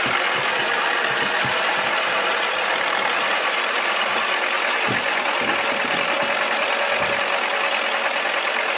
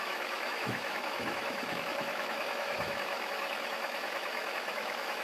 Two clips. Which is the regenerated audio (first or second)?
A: second